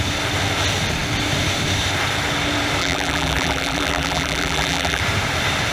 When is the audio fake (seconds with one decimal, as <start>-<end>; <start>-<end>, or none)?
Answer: 2.8-5.0